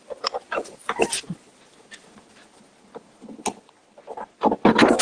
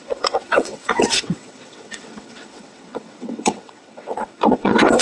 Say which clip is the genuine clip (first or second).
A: first